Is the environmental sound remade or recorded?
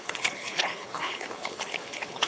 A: remade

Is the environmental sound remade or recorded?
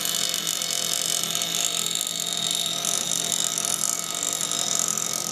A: recorded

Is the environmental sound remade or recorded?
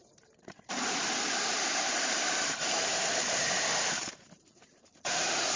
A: remade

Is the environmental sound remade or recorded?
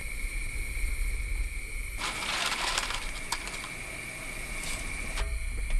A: recorded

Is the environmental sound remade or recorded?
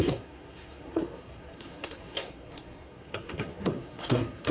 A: remade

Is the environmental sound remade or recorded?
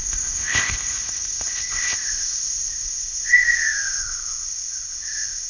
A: remade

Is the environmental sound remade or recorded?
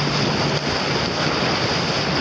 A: recorded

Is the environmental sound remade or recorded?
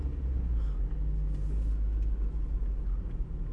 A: recorded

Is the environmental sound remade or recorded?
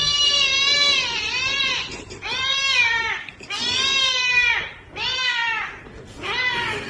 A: recorded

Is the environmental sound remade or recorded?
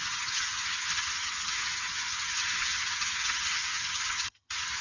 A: remade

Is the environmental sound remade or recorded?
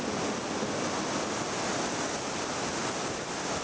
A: recorded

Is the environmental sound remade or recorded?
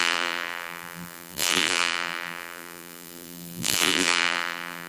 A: remade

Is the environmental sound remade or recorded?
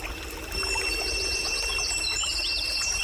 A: recorded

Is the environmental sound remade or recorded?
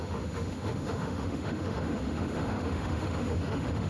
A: remade